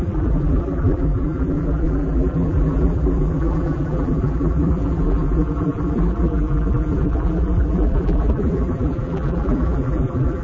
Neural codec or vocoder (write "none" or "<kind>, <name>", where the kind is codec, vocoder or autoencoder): vocoder, BigVGAN v2